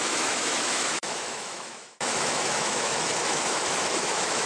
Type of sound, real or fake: fake